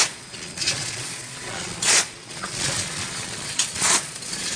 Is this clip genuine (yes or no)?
no